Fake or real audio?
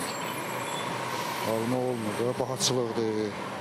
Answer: real